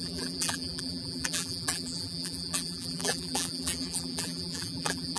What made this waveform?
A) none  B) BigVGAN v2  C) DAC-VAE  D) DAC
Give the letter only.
B